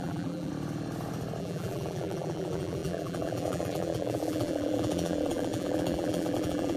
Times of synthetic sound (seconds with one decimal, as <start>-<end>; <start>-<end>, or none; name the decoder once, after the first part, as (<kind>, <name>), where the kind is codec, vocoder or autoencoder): 0.0-0.5 (vocoder, BigVGAN v2); 1.4-6.8